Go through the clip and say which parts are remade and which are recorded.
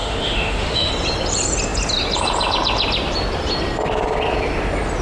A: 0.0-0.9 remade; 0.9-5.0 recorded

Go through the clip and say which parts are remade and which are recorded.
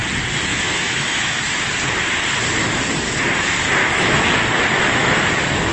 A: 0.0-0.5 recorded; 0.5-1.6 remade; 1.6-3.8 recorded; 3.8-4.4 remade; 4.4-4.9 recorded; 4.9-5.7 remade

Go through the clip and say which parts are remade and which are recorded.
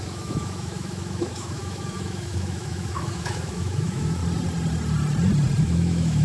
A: 0.0-4.2 remade; 4.2-5.6 recorded; 5.6-6.2 remade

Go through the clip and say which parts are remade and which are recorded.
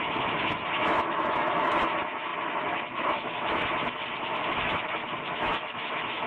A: 0.0-3.6 remade; 3.6-4.4 recorded; 4.4-6.3 remade